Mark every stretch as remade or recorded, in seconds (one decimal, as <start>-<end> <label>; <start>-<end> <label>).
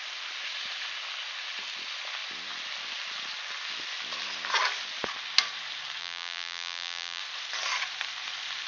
0.0-6.0 recorded; 6.0-7.2 remade; 7.2-8.7 recorded